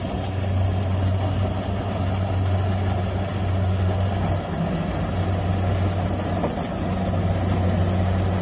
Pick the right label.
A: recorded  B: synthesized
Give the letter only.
A